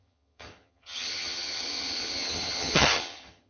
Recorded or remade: remade